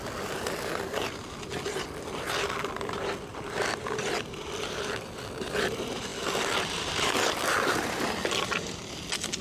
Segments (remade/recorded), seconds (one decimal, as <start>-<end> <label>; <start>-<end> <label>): 0.0-3.3 recorded; 3.3-4.1 remade; 4.1-9.4 recorded